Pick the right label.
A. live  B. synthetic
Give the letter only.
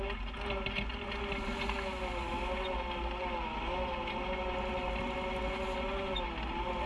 A